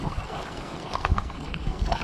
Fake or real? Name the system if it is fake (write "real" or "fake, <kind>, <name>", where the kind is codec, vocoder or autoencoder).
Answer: fake, codec, SNAC